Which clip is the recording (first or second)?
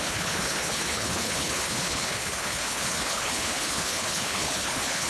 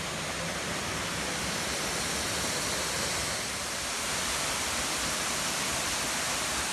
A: second